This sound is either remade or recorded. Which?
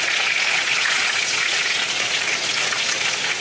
remade